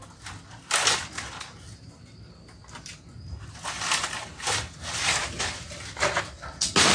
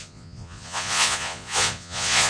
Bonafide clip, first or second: first